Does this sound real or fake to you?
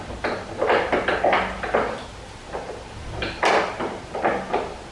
real